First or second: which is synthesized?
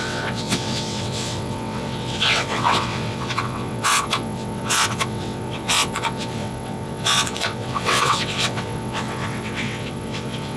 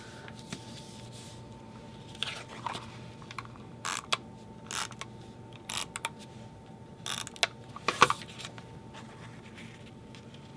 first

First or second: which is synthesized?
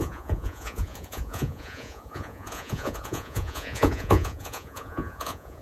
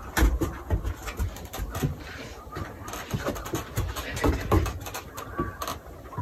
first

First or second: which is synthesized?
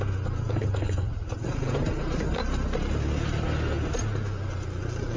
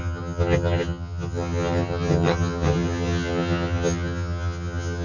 second